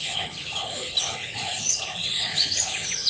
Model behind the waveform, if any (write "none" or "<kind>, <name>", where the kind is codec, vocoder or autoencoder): codec, HILCodec